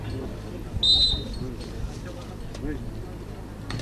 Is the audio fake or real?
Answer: real